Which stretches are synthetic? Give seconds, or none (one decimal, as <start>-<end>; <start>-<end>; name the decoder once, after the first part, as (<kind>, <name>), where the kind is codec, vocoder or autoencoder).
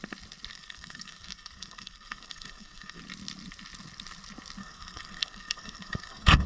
0.5-3.0 (codec, SNAC); 4.6-6.5